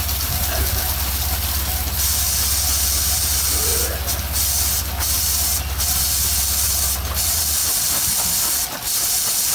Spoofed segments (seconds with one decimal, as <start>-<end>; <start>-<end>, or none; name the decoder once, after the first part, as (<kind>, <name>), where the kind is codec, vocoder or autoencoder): none